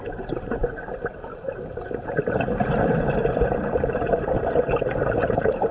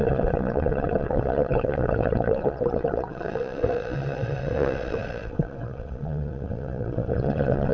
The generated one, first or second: second